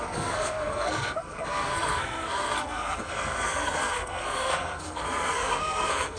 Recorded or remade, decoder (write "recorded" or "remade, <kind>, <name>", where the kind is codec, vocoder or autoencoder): remade, codec, SNAC